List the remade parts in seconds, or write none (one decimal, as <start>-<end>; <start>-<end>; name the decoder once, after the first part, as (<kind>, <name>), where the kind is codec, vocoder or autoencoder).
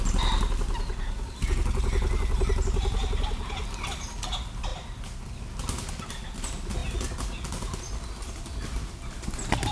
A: none